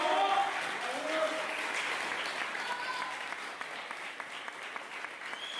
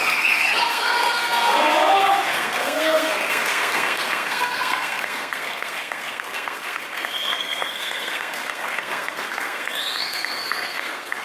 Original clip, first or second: first